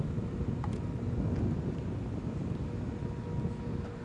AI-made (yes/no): no